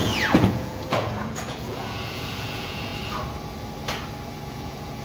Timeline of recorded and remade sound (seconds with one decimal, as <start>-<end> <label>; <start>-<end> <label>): 0.0-2.9 remade; 2.9-4.5 recorded; 4.5-5.0 remade